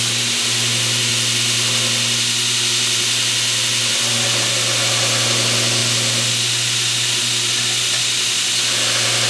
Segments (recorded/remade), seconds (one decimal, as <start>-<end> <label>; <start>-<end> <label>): 0.0-9.3 recorded